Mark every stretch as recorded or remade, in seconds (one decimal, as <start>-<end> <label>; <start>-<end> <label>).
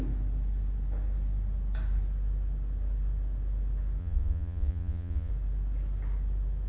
0.0-4.0 recorded; 4.0-5.3 remade; 5.3-6.7 recorded